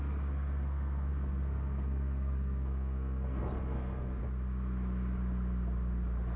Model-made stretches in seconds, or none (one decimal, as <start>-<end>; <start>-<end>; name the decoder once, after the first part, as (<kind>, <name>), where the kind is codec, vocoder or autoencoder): 0.0-4.2 (codec, SNAC)